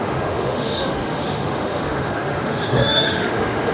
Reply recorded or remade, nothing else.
remade